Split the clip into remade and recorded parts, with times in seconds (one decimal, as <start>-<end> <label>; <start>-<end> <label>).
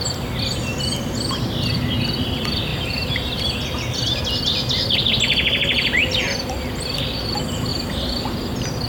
0.0-2.7 recorded; 2.7-4.2 remade; 4.2-7.7 recorded; 7.7-8.2 remade; 8.2-8.9 recorded